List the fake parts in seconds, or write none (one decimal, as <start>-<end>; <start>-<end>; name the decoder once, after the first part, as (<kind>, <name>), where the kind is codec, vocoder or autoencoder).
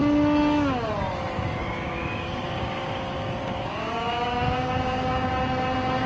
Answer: 1.6-5.3 (codec, DAC)